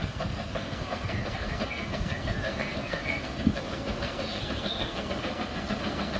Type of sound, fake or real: fake